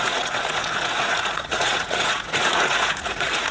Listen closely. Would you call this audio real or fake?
fake